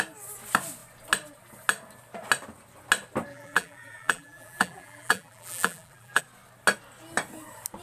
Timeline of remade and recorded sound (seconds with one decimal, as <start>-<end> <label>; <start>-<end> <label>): 0.0-3.3 recorded; 3.3-6.2 remade; 6.2-7.8 recorded

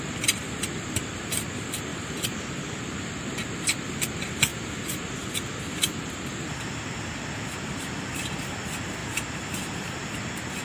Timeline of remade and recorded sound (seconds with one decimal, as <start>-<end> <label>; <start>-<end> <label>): 0.0-0.4 recorded; 0.4-1.1 remade; 1.1-4.5 recorded; 4.5-8.5 remade; 8.5-9.0 recorded; 9.0-9.9 remade; 9.9-10.6 recorded